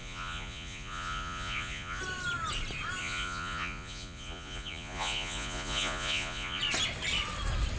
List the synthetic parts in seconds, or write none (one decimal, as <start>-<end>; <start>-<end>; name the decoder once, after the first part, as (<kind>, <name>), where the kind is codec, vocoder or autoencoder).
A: 0.0-2.0 (vocoder, Vocos); 3.0-6.6

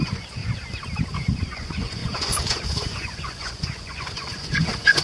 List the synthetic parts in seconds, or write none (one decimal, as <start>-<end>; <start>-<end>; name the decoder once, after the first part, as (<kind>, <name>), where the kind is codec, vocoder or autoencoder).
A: 0.0-0.4 (vocoder, Vocos); 1.4-5.0